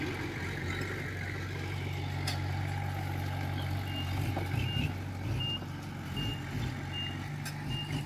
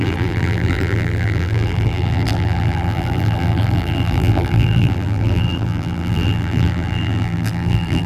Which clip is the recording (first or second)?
first